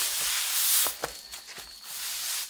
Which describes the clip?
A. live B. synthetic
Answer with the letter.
A